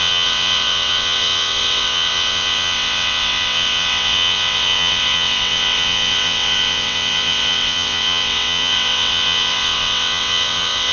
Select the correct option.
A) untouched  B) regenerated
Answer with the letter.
B